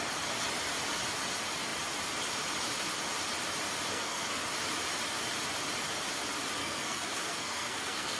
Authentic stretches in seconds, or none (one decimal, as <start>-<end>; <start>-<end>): 0.0-3.9; 4.4-6.6